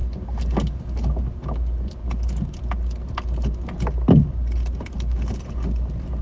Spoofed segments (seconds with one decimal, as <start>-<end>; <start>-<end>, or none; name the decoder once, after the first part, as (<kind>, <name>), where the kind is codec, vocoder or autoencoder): none